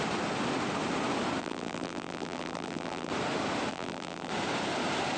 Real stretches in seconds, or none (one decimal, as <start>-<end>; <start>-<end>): 0.0-1.4; 3.1-3.7; 4.3-5.2